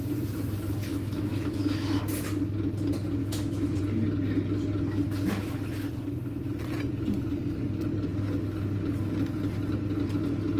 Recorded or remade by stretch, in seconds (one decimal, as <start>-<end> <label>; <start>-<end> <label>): 0.0-0.9 recorded; 0.9-2.0 remade; 2.0-3.2 recorded; 3.2-3.8 remade; 3.8-10.6 recorded